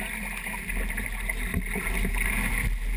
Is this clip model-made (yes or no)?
no